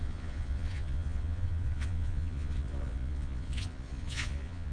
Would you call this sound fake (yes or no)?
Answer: yes